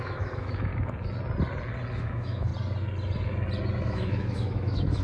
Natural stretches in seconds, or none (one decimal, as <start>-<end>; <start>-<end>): 0.7-2.0; 2.5-3.8